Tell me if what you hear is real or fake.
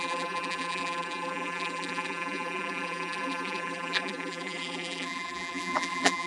fake